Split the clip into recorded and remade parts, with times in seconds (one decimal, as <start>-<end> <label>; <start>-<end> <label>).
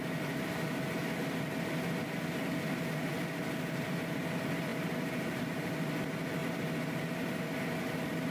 0.0-4.7 recorded; 4.7-5.7 remade; 5.7-8.3 recorded